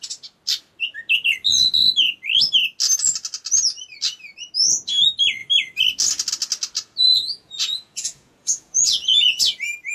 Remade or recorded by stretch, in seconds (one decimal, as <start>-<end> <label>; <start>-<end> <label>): 0.0-7.0 recorded; 7.0-9.4 remade; 9.4-9.9 recorded